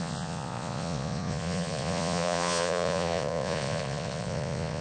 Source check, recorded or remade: remade